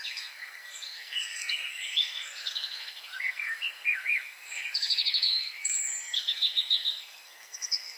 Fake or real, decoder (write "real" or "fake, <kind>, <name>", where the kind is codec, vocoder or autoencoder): fake, codec, SNAC